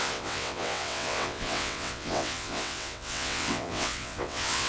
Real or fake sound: fake